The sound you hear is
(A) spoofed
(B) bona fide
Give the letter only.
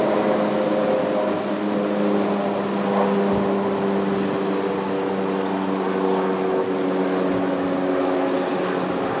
B